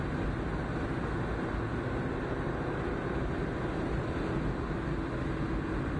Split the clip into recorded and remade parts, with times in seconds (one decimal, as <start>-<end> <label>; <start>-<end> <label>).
0.0-6.0 recorded